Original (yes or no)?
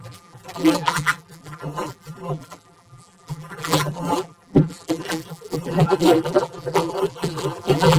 no